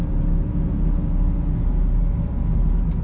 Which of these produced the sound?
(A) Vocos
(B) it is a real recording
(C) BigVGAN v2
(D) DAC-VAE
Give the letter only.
B